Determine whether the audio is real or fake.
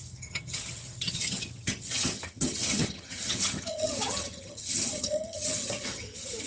fake